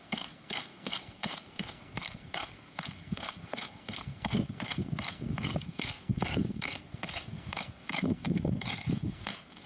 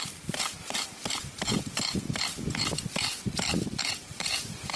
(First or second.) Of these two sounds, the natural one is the second